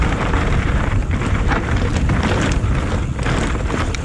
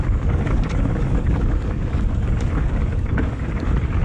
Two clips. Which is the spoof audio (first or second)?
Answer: second